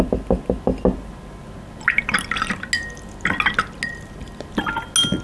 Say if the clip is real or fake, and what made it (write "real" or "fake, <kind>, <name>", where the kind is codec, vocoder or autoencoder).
real